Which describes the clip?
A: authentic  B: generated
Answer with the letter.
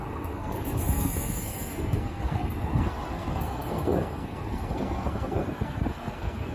B